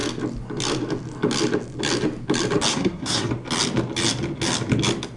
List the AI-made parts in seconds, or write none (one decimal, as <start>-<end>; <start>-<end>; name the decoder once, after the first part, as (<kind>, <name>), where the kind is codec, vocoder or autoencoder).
2.7-3.3 (codec, SNAC)

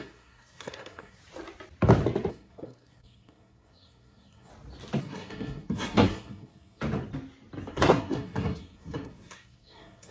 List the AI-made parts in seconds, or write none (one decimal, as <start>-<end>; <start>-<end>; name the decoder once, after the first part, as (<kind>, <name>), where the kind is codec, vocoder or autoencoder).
0.0-1.2 (codec, SNAC); 2.3-4.5; 5.0-6.8; 7.7-10.1

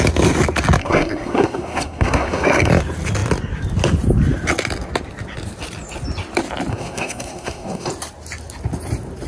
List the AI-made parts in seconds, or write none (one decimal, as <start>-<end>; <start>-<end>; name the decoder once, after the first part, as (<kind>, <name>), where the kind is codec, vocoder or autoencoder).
0.8-2.7 (codec, SNAC); 6.7-7.9

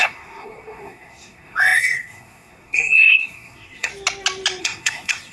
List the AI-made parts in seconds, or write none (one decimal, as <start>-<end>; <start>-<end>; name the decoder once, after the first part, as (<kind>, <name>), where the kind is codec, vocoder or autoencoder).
0.0-3.9 (codec, SNAC); 4.6-5.3